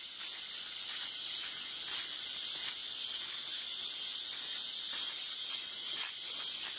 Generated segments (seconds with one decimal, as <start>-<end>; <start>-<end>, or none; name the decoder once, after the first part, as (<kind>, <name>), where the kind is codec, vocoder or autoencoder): none